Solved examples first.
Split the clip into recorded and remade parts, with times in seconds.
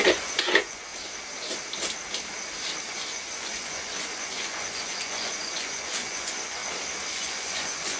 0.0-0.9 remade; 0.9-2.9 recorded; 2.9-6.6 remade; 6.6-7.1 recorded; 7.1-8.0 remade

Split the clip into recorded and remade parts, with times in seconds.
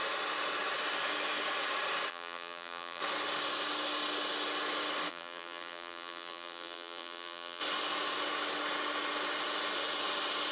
0.0-2.1 recorded; 2.1-3.0 remade; 3.0-5.1 recorded; 5.1-7.6 remade; 7.6-10.5 recorded